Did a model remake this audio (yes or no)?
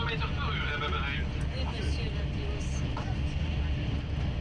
no